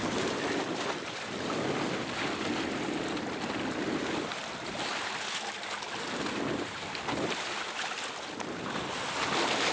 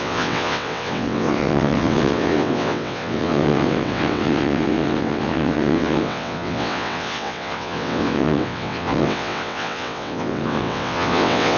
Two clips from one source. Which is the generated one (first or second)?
second